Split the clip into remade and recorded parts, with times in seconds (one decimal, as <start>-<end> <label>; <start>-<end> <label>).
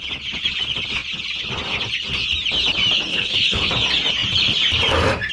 0.0-3.1 recorded; 3.1-3.7 remade; 3.7-5.3 recorded